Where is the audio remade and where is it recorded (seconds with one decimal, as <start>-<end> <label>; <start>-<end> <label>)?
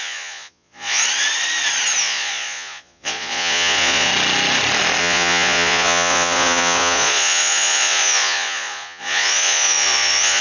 0.0-1.0 remade; 1.0-2.0 recorded; 2.0-4.1 remade; 4.1-5.0 recorded; 5.0-10.4 remade